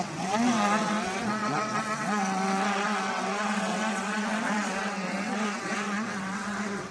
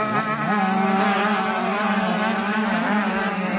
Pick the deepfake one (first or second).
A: first